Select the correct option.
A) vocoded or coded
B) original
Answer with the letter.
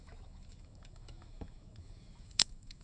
A